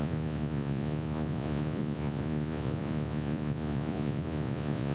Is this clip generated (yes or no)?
yes